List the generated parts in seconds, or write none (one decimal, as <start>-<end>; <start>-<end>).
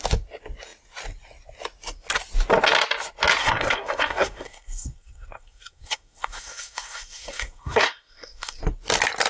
3.4-8.6